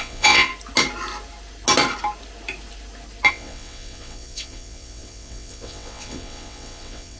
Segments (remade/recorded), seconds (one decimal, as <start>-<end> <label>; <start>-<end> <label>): 0.0-0.5 remade; 0.5-3.3 recorded; 3.3-7.2 remade